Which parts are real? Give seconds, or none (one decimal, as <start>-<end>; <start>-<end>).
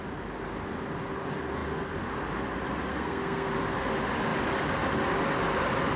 0.0-2.9; 3.5-6.0